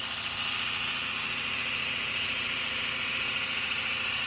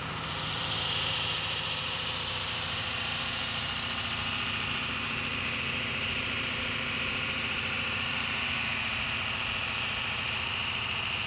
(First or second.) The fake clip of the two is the second